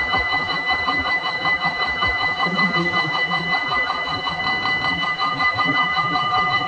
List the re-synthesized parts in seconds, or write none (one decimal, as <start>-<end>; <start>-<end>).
0.0-4.4; 4.9-6.7